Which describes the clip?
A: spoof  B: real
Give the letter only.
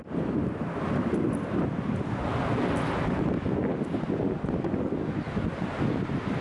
B